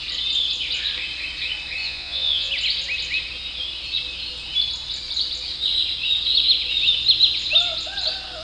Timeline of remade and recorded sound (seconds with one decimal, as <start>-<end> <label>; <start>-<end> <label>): 0.0-1.8 recorded; 1.8-2.5 remade; 2.5-8.4 recorded